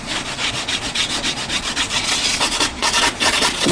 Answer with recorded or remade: remade